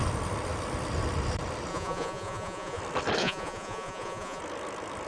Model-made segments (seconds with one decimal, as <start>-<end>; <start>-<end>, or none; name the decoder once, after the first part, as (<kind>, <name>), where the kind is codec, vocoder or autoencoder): 1.7-2.8 (vocoder, Vocos); 3.2-4.4